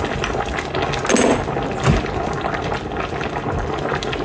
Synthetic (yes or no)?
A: no